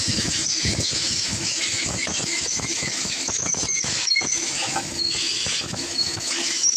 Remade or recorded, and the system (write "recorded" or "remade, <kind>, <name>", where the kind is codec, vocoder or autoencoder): remade, autoencoder, DAC-VAE